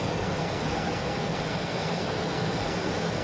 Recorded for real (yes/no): no